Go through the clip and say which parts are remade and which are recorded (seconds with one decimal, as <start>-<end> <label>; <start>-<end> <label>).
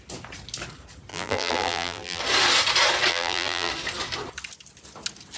0.0-1.1 recorded; 1.1-2.2 remade; 2.2-3.1 recorded; 3.1-3.7 remade; 3.7-5.4 recorded